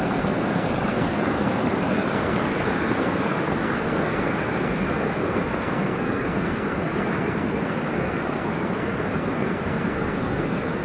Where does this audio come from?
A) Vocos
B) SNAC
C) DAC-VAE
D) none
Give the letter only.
B